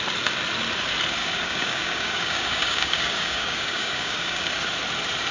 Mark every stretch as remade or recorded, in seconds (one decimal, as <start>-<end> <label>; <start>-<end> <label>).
0.0-1.2 recorded; 1.2-4.4 remade; 4.4-5.3 recorded